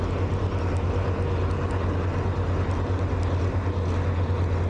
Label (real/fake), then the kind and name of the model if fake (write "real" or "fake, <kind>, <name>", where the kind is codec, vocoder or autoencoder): real